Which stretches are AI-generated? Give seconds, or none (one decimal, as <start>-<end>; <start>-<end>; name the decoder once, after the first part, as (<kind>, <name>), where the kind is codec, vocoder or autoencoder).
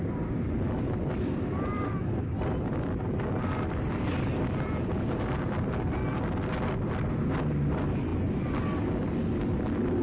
none